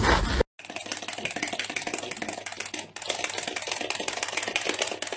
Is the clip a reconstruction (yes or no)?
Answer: no